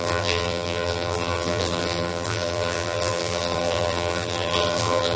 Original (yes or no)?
no